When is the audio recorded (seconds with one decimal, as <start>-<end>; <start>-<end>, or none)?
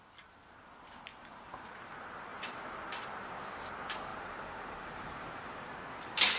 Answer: 0.0-1.1; 1.9-4.1; 5.7-6.4